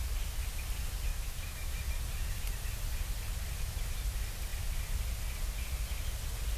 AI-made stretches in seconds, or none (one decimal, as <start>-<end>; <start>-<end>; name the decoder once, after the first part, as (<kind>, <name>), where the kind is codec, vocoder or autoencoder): 1.1-1.7 (autoencoder, DAC-VAE)